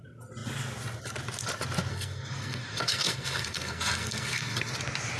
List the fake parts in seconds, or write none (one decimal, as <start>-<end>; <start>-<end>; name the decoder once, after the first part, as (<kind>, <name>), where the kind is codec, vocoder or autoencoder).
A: 1.9-4.7 (codec, SNAC)